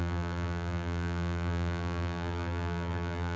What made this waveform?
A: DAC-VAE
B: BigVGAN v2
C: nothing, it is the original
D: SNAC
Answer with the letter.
B